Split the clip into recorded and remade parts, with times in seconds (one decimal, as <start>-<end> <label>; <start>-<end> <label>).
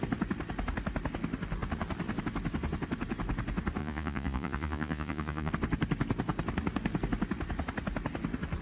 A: 0.0-3.8 recorded; 3.8-5.5 remade; 5.5-8.6 recorded